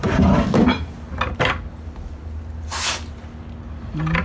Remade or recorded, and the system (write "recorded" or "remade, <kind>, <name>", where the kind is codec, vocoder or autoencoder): recorded